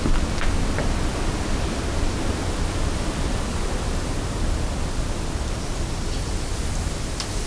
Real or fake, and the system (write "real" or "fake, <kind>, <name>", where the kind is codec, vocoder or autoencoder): real